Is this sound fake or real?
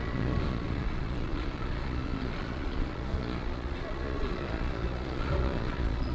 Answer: fake